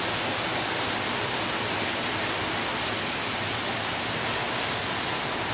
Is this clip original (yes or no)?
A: yes